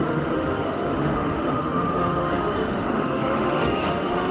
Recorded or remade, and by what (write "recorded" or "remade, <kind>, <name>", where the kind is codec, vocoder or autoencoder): remade, autoencoder, DAC-VAE